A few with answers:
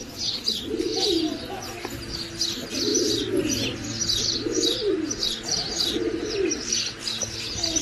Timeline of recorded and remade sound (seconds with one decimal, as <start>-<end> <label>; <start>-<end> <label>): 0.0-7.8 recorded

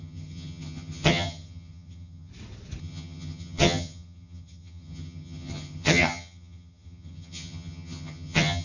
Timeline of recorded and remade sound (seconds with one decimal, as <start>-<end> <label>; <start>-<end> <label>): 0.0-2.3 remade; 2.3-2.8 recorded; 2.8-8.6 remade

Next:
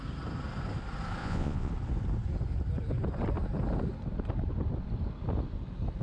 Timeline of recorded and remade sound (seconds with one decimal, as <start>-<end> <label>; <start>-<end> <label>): 0.0-1.2 recorded; 1.2-1.7 remade; 1.7-6.0 recorded

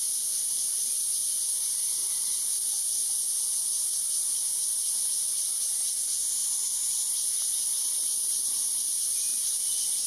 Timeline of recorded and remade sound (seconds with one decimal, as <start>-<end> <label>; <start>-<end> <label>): 0.0-9.3 recorded; 9.3-10.1 remade